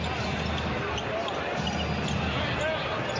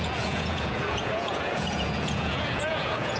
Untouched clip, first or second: first